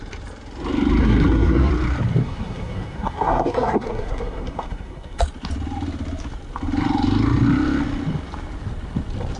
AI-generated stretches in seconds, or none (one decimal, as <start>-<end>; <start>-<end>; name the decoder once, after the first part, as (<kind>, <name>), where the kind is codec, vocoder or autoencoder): 1.0-1.7 (codec, SNAC); 2.2-5.2